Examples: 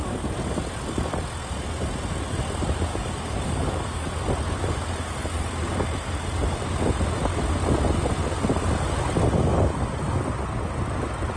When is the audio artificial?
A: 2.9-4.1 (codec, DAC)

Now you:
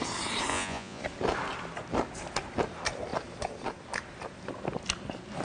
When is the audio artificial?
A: 0.5-1.0 (vocoder, Vocos)

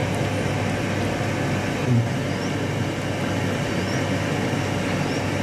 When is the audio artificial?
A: none

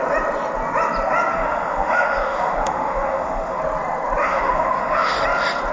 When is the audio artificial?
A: 1.3-3.6 (autoencoder, DAC-VAE); 4.2-5.2